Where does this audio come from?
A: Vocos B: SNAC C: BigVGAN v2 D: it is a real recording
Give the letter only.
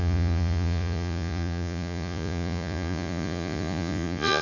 A